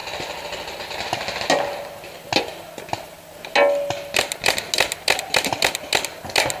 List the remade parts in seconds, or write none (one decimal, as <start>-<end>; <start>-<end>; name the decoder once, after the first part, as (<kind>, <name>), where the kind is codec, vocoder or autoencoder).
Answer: none